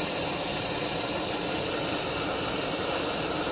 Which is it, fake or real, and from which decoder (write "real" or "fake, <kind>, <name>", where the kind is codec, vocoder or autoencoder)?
real